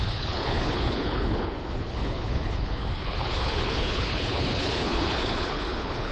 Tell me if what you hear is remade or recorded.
remade